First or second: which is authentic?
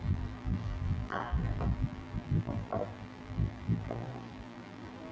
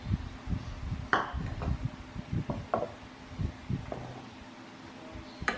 second